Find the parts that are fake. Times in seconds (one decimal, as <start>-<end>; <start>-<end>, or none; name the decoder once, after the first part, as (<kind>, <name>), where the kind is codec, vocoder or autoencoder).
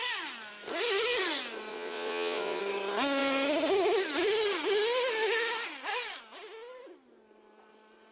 1.7-2.6 (vocoder, Vocos)